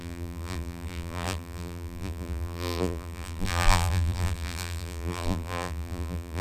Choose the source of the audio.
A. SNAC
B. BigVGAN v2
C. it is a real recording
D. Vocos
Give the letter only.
B